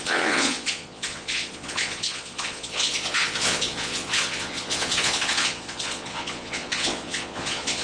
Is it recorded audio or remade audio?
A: remade